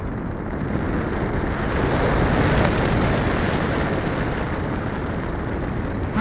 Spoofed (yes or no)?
no